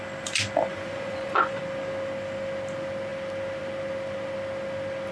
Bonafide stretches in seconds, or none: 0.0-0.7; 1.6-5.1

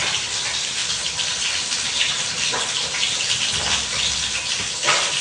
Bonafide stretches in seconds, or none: 0.0-5.2

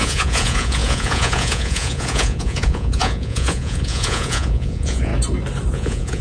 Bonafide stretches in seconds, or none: 5.1-5.7

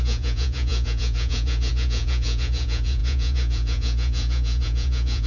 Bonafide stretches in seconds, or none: none